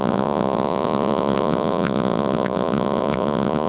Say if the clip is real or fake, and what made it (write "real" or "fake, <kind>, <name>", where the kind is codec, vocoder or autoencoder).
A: fake, vocoder, Vocos